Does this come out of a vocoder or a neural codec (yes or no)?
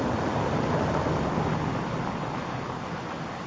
no